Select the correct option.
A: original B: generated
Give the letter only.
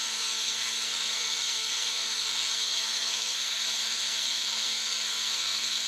B